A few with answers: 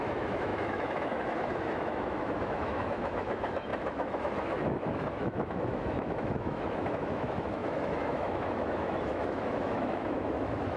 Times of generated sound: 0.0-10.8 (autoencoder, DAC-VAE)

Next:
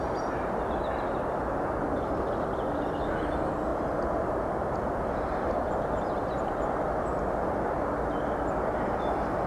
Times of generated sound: none

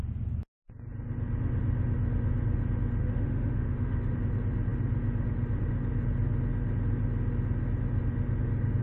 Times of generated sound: 3.0-4.1 (autoencoder, DAC-VAE)

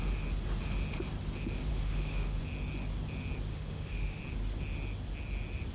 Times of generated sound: 1.7-2.4 (autoencoder, DAC-VAE); 3.5-4.2

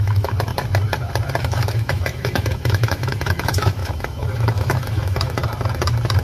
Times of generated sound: 0.0-0.5 (autoencoder, DAC-VAE); 1.4-5.4

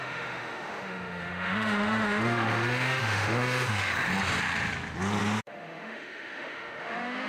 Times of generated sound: 0.0-4.1 (autoencoder, DAC-VAE); 5.4-7.3

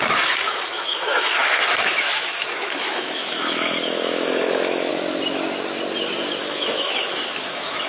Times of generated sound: 0.0-4.9 (autoencoder, DAC-VAE); 6.4-7.9

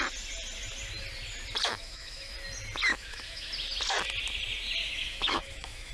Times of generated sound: 1.7-2.3 (autoencoder, DAC-VAE); 2.9-3.5; 4.8-5.9